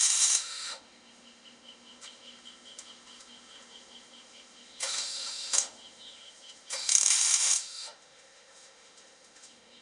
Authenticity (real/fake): fake